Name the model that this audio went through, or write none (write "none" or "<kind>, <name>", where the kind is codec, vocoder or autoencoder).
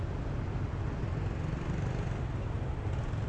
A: none